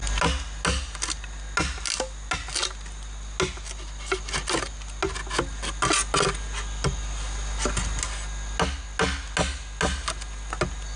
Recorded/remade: recorded